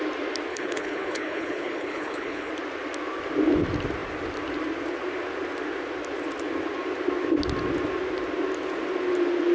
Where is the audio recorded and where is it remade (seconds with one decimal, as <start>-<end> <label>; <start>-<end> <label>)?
0.0-0.5 recorded; 0.5-2.5 remade; 2.5-9.5 recorded